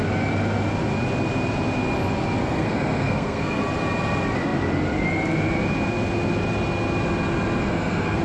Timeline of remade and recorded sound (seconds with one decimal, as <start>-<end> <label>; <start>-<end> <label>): 0.0-2.4 recorded; 2.4-3.6 remade; 3.6-7.6 recorded; 7.6-8.2 remade